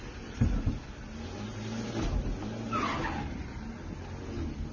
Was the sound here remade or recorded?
recorded